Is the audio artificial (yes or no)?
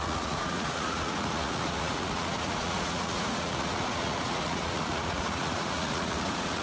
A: yes